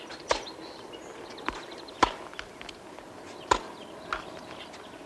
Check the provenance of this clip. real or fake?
real